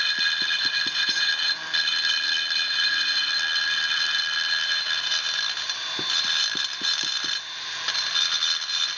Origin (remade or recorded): recorded